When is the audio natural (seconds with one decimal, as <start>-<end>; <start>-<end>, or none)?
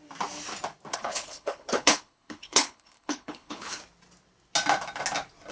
0.0-0.9; 3.8-5.5